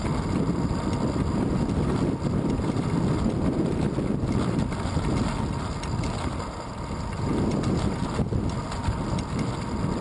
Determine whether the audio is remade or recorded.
recorded